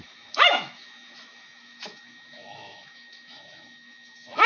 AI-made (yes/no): yes